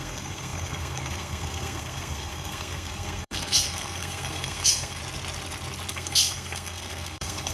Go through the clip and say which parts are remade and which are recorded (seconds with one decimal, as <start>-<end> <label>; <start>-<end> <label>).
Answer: 0.0-5.0 remade; 5.0-5.9 recorded; 5.9-7.5 remade